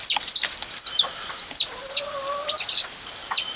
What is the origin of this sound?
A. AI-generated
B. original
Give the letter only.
A